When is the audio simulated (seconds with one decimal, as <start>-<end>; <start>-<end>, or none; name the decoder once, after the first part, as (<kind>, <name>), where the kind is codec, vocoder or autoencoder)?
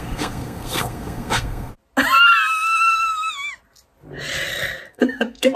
0.0-1.7 (codec, SNAC); 4.9-5.6